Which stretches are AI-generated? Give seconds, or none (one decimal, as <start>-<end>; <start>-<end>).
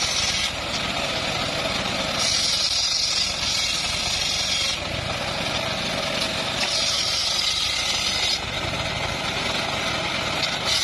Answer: none